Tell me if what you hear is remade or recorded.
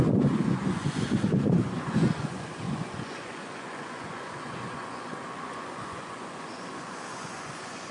remade